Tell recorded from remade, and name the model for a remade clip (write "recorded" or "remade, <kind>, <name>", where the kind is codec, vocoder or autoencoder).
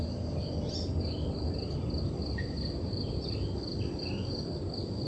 recorded